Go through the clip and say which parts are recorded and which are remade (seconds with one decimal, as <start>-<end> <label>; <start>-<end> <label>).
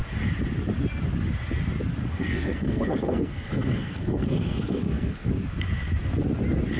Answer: 0.0-2.0 recorded; 2.0-5.3 remade; 5.3-6.8 recorded